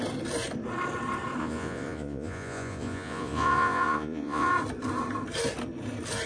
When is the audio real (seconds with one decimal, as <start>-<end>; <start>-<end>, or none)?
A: 0.0-1.4; 4.5-6.3